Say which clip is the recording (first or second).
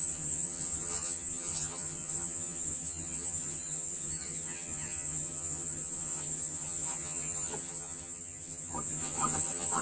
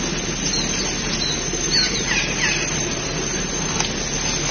second